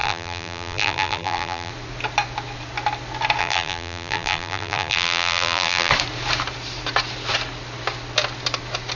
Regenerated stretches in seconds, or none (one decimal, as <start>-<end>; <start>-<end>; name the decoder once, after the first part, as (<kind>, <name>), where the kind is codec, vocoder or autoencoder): 0.0-1.7 (vocoder, BigVGAN v2); 3.4-5.9